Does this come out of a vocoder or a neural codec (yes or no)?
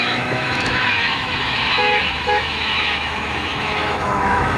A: yes